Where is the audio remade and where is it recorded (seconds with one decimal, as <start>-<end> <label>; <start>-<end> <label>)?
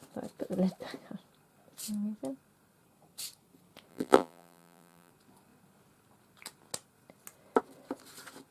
0.0-3.9 recorded; 3.9-5.1 remade; 5.1-8.5 recorded